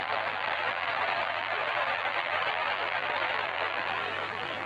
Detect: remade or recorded remade